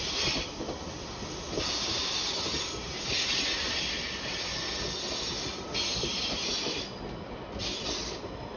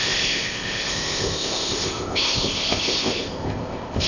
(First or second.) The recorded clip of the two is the first